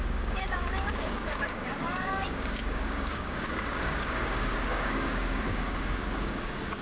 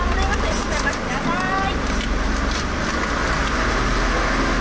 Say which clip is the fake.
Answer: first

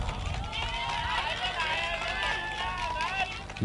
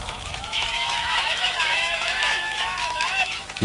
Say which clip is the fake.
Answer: second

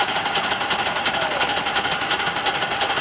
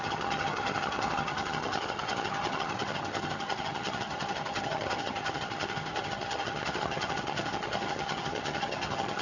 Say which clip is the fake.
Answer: second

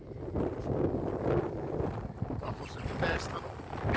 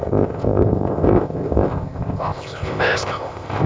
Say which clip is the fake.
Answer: second